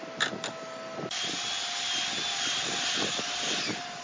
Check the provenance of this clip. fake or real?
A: real